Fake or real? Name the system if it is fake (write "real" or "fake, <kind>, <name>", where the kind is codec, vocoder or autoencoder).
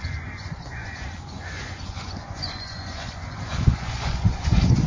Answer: fake, vocoder, Vocos